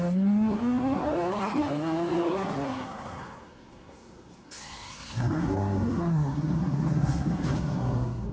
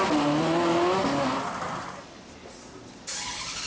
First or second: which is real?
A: second